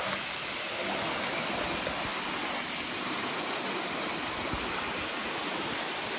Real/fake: real